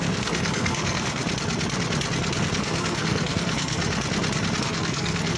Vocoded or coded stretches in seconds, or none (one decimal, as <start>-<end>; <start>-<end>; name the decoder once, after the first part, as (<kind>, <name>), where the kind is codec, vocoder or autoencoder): 0.0-1.2 (codec, SNAC); 2.4-3.8; 4.6-5.4